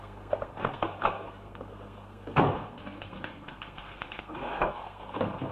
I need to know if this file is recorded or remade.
remade